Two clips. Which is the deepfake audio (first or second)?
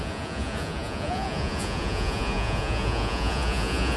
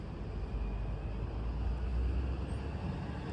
first